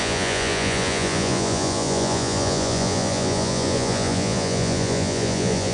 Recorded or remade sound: remade